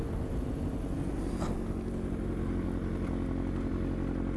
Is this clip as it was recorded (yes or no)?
yes